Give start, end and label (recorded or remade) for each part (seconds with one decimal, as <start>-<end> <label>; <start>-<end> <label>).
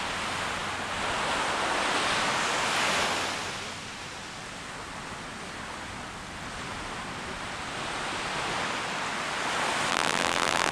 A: 0.0-9.9 recorded; 9.9-10.7 remade